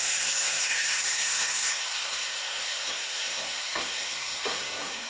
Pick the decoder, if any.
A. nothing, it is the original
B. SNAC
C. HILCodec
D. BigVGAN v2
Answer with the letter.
B